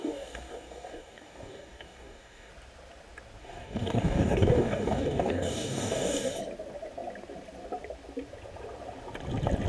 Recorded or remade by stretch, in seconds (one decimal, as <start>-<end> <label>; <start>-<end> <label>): 0.0-2.5 remade; 2.5-3.4 recorded; 3.4-6.3 remade; 6.3-9.7 recorded